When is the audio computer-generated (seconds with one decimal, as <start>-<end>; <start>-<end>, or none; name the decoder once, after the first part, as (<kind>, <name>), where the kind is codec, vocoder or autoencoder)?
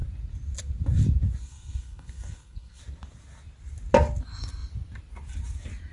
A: 1.4-2.8 (codec, SNAC)